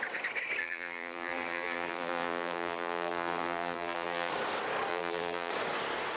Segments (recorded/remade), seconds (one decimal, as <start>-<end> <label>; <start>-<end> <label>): 0.0-0.6 recorded; 0.6-4.3 remade; 4.3-4.9 recorded; 4.9-5.5 remade; 5.5-6.2 recorded